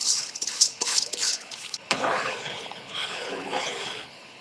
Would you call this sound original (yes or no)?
no